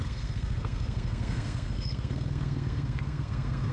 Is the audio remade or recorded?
remade